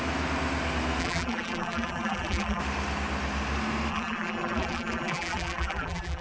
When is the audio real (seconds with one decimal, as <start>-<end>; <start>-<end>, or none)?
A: 0.0-1.0; 2.6-3.9